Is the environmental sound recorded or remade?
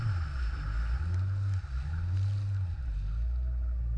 recorded